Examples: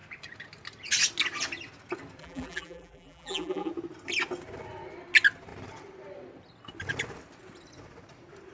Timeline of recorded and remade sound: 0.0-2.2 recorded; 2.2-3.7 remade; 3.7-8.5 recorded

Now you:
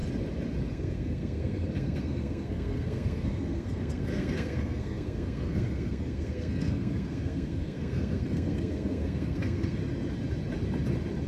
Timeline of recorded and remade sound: 0.0-0.7 recorded; 0.7-9.8 remade; 9.8-11.3 recorded

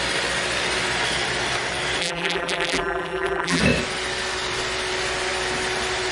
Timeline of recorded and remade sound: 0.0-2.0 recorded; 2.0-3.6 remade; 3.6-6.1 recorded

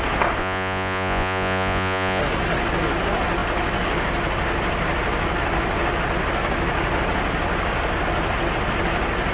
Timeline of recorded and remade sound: 0.0-0.4 recorded; 0.4-2.2 remade; 2.2-9.3 recorded

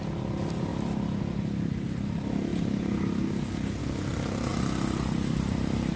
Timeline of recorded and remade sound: 0.0-2.5 recorded; 2.5-3.4 remade; 3.4-6.0 recorded

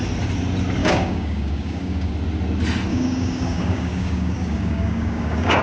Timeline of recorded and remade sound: 0.0-0.8 recorded; 0.8-2.1 remade; 2.1-2.9 recorded; 2.9-5.6 remade

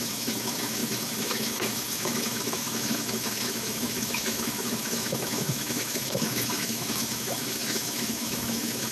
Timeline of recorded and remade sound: 0.0-8.9 remade

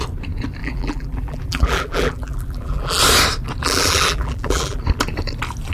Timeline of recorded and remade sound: 0.0-0.6 recorded; 0.6-3.0 remade; 3.0-3.6 recorded; 3.6-4.8 remade; 4.8-5.7 recorded